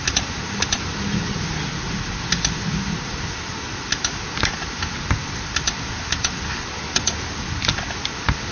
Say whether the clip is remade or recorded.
recorded